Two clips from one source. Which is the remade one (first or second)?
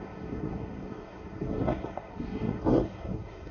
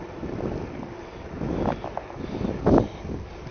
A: first